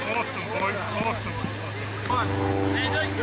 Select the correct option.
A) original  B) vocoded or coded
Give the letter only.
A